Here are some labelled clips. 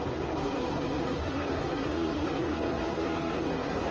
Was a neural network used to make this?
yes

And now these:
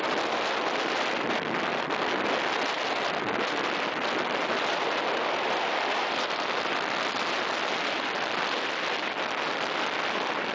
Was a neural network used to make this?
no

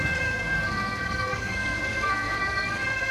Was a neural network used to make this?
yes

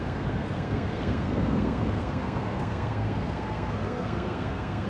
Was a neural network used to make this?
yes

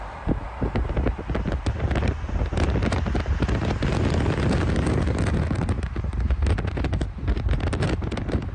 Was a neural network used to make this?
no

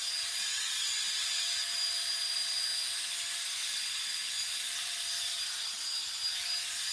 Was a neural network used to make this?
no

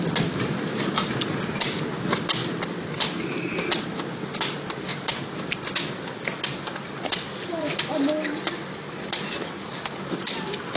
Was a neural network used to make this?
no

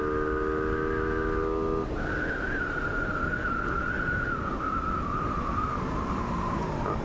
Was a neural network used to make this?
no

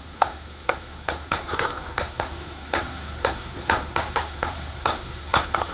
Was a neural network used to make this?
yes